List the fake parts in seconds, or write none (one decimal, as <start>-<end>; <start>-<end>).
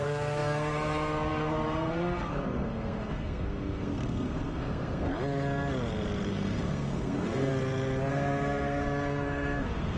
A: 0.0-5.1; 6.3-7.5; 8.1-10.0